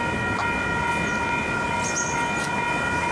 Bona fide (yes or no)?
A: yes